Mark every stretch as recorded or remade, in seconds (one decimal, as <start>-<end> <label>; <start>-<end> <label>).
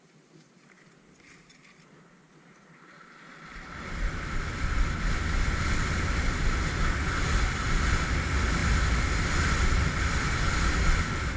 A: 0.0-11.4 recorded